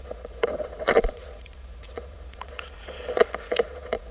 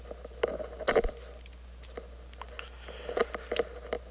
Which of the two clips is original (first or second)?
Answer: second